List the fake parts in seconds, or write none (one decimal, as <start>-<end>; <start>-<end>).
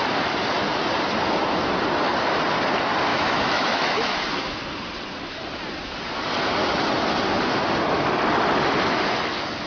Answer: 3.1-4.2